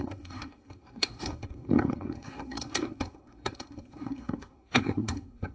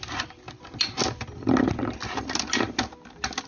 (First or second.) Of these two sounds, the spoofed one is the first